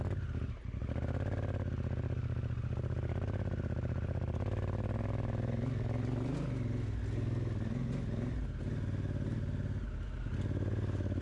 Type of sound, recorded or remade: recorded